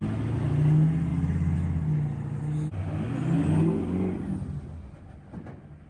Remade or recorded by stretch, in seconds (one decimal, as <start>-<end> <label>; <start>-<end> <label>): 0.0-5.9 recorded